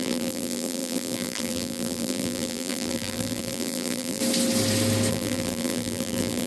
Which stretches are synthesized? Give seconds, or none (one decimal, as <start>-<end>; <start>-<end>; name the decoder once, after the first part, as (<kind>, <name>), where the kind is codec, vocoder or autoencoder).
0.0-4.2 (vocoder, BigVGAN v2); 5.1-6.5